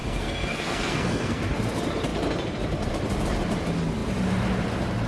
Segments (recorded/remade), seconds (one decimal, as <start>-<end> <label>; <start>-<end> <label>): 0.0-1.4 remade; 1.4-5.1 recorded